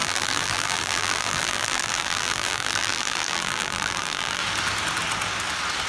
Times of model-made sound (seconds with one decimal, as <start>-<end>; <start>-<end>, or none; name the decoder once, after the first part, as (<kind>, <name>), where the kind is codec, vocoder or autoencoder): 0.0-4.4 (vocoder, BigVGAN v2)